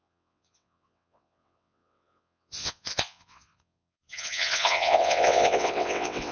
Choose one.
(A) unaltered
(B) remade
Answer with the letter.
B